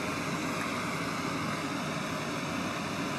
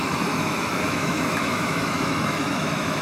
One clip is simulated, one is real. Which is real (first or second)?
first